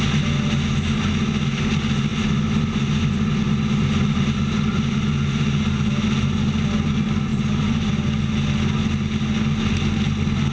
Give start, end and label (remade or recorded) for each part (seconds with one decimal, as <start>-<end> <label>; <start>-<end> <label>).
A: 0.0-7.3 recorded; 7.3-7.9 remade; 7.9-10.5 recorded